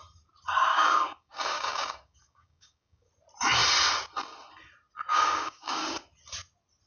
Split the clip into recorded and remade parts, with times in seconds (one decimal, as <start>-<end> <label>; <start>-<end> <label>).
0.0-0.7 recorded; 0.7-3.1 remade; 3.1-5.1 recorded; 5.1-6.0 remade; 6.0-6.9 recorded